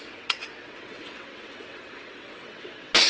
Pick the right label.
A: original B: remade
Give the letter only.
B